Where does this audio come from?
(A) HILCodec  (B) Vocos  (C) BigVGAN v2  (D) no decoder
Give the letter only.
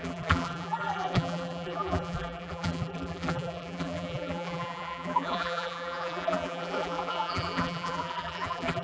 C